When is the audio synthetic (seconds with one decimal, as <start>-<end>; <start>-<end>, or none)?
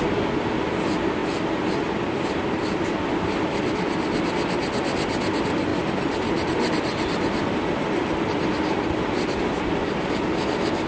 1.2-2.0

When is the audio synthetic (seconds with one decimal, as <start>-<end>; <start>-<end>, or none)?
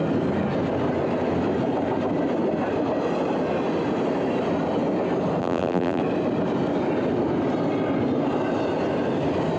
5.4-6.0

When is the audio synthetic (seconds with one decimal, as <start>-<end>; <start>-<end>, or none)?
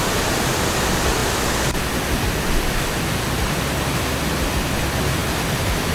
none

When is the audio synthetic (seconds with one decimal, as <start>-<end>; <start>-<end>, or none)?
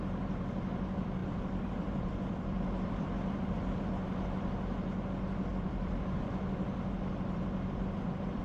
1.2-3.4; 5.5-8.4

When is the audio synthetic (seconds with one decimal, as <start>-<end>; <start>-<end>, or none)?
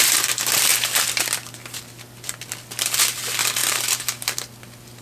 0.7-3.0; 3.6-5.0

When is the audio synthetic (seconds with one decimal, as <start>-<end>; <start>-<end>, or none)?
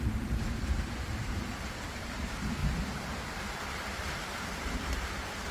0.0-5.5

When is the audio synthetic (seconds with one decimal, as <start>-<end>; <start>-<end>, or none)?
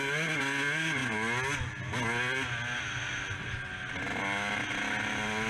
none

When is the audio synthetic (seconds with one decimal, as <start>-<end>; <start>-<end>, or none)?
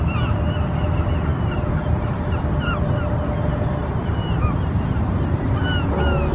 3.8-5.5